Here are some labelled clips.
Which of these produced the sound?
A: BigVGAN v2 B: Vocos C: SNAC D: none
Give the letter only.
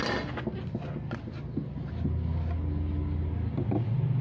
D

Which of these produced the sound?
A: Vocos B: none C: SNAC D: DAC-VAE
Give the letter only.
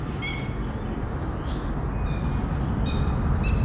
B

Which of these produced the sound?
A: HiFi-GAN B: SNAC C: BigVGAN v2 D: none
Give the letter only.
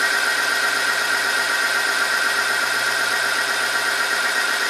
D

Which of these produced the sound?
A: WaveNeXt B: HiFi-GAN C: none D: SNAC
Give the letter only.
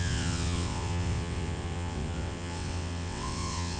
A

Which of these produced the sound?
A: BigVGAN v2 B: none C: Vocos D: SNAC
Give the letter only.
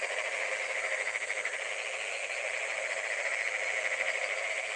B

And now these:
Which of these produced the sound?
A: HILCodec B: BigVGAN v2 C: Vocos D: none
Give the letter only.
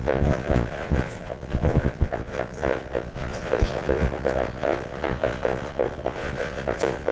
C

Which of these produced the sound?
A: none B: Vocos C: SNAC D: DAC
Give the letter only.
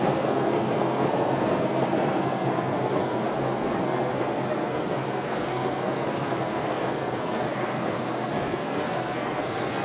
C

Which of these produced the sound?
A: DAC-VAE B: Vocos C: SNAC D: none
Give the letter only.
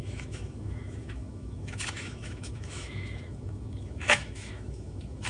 A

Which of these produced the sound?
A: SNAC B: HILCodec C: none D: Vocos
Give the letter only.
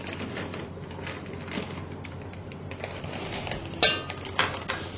C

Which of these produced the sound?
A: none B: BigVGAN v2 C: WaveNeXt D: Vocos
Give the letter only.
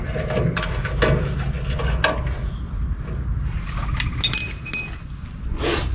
A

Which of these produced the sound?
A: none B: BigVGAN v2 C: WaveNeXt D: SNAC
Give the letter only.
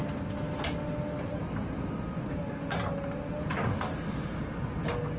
A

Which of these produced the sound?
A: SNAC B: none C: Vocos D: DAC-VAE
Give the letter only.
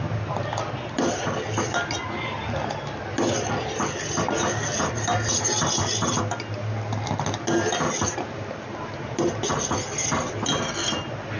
B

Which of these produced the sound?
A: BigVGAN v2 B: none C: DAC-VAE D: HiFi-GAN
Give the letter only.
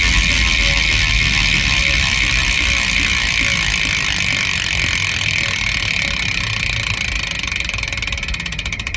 B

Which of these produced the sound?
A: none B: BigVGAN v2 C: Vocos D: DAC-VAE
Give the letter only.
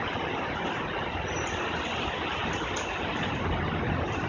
B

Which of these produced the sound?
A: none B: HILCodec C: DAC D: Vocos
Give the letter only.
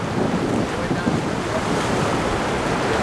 A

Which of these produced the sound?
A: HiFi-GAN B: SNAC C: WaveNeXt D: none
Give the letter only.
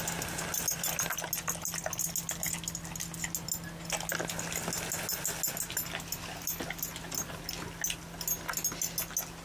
D